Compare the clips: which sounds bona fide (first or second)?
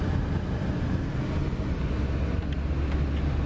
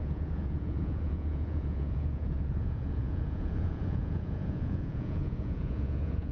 first